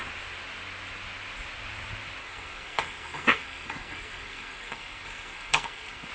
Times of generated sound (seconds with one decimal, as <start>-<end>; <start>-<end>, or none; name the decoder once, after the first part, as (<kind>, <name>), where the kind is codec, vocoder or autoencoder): 2.2-6.1 (codec, SNAC)